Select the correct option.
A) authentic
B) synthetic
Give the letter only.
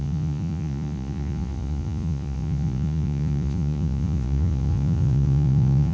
B